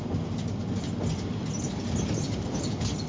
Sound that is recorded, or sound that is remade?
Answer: recorded